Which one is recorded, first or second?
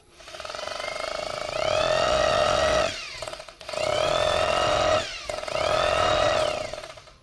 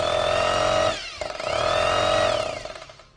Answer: second